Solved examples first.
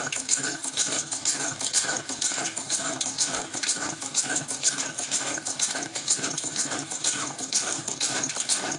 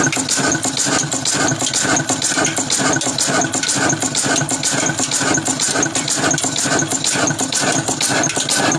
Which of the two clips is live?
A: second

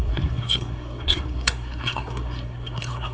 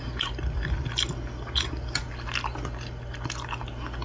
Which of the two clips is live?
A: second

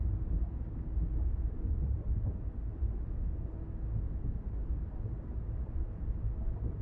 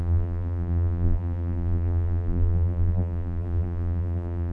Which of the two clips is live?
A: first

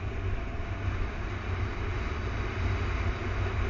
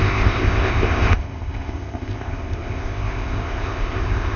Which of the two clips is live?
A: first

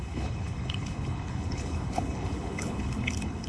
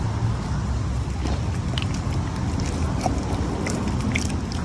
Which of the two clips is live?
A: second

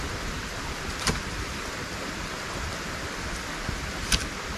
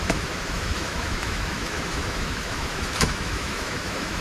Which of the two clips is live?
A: first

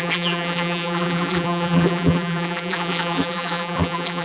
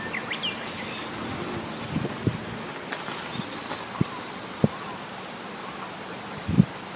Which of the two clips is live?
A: second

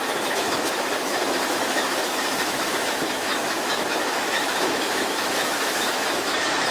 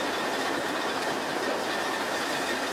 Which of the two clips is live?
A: second